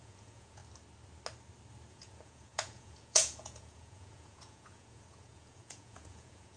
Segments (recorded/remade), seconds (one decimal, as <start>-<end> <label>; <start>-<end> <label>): 0.0-0.6 remade; 0.6-1.9 recorded; 1.9-6.6 remade